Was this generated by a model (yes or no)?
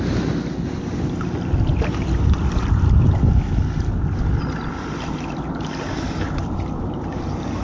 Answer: no